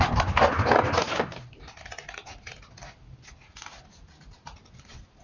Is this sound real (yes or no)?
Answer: yes